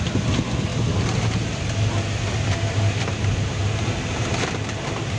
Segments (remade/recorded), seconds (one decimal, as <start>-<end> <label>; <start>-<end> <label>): 0.0-5.2 recorded